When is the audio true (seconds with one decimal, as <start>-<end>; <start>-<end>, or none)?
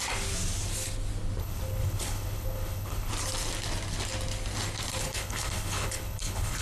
0.0-1.4; 3.1-5.0